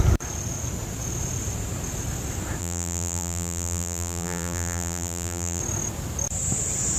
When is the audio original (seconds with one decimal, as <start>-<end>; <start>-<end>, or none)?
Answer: 0.0-2.6; 5.6-7.0